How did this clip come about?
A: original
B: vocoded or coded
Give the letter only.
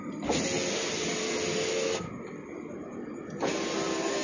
A